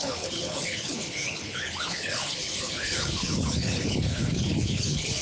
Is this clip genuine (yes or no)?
no